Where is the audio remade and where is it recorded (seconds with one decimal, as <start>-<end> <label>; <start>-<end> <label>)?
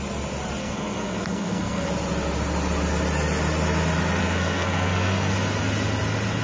0.0-0.6 recorded; 0.6-1.9 remade; 1.9-4.2 recorded; 4.2-5.3 remade; 5.3-6.4 recorded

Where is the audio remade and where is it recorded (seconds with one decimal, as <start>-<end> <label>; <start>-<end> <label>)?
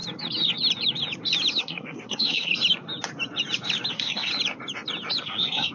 0.0-1.6 recorded; 1.6-2.5 remade; 2.5-3.9 recorded; 3.9-4.3 remade; 4.3-5.2 recorded; 5.2-5.7 remade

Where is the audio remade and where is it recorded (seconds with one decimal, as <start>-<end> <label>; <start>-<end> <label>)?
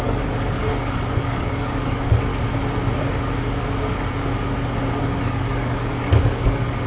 0.0-2.3 remade; 2.3-5.0 recorded; 5.0-6.9 remade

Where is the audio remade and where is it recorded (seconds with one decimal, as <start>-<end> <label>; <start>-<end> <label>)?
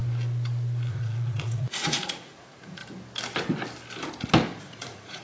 0.0-0.9 recorded; 0.9-2.8 remade; 2.8-4.6 recorded; 4.6-5.2 remade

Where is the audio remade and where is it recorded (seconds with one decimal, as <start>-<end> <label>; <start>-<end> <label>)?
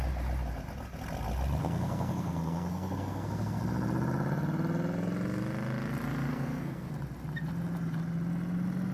0.0-1.6 recorded; 1.6-3.6 remade; 3.6-6.3 recorded; 6.3-6.9 remade; 6.9-8.9 recorded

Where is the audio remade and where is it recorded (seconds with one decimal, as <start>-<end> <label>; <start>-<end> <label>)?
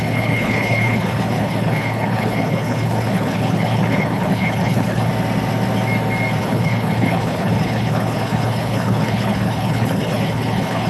0.0-5.1 remade; 5.1-6.4 recorded; 6.4-10.9 remade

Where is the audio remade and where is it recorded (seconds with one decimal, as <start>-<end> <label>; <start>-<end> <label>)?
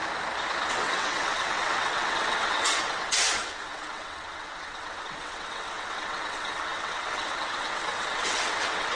0.0-0.7 recorded; 0.7-9.0 remade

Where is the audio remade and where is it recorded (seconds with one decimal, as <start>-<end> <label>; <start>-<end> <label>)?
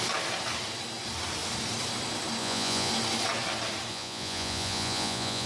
0.0-2.4 recorded; 2.4-2.9 remade; 2.9-3.9 recorded; 3.9-5.5 remade